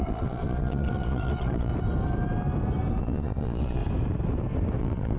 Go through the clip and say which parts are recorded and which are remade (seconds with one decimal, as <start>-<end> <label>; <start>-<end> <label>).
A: 0.0-1.7 remade; 1.7-3.0 recorded; 3.0-3.8 remade; 3.8-4.8 recorded; 4.8-5.2 remade